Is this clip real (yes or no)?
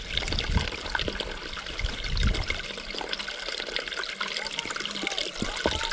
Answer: yes